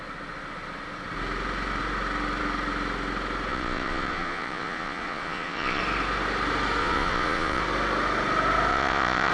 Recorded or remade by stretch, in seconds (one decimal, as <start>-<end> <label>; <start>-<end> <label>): 0.0-3.5 recorded; 3.5-5.8 remade; 5.8-6.8 recorded; 6.8-7.6 remade; 7.6-8.7 recorded; 8.7-9.3 remade